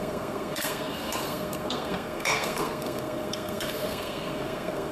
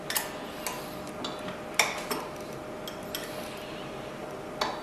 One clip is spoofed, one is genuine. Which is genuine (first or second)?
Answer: second